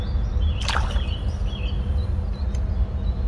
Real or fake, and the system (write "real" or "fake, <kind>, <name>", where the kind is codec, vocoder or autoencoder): real